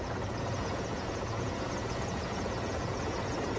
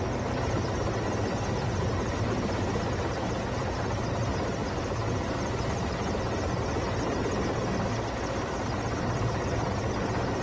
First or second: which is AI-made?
first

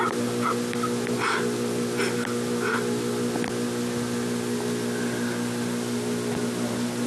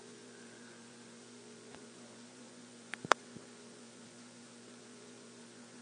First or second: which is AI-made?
second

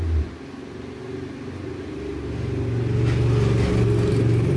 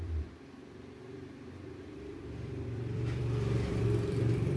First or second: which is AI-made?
second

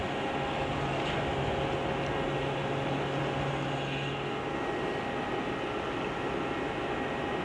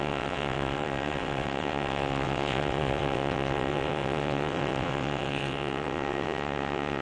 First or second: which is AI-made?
second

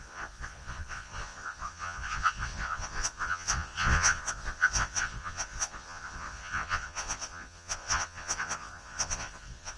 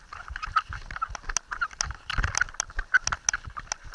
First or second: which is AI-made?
first